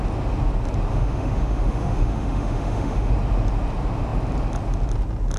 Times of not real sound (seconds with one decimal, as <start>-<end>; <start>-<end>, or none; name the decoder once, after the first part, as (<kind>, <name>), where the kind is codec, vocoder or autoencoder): 0.9-3.1 (autoencoder, DAC-VAE)